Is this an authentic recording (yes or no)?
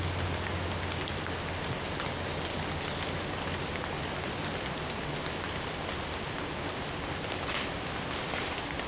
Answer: yes